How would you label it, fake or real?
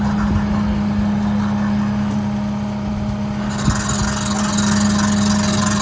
real